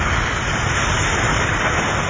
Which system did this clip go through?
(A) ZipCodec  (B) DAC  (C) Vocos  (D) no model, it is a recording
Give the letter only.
D